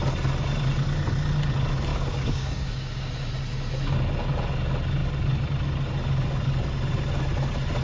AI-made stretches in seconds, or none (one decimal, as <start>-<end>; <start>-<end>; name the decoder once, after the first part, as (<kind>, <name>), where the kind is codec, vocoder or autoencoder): 1.9-3.1 (codec, DAC)